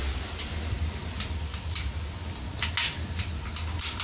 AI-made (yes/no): no